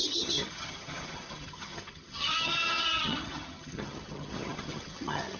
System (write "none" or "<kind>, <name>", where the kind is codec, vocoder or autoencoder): vocoder, HiFi-GAN